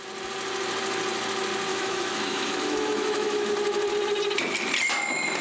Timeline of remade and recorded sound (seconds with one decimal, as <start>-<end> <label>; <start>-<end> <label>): 0.0-1.7 recorded; 1.7-3.5 remade; 3.5-5.4 recorded